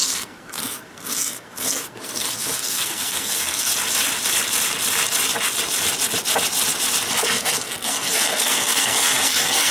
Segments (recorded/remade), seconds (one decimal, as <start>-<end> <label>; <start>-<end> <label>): 0.0-3.7 remade; 3.7-7.2 recorded; 7.2-9.7 remade